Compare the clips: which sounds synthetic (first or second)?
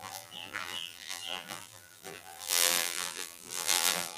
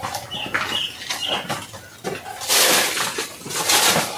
first